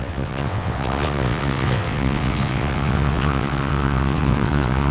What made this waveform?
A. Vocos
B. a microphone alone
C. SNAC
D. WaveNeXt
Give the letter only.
D